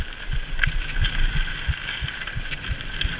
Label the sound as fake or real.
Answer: real